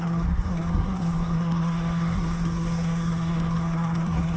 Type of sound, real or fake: fake